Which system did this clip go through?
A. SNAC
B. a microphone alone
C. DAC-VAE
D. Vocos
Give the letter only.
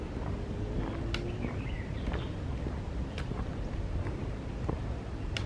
B